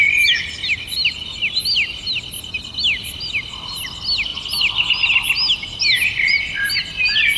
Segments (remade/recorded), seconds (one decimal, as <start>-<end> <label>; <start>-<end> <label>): 0.0-7.4 recorded